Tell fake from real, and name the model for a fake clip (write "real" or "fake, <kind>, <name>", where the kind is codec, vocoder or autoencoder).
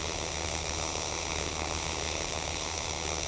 fake, codec, SNAC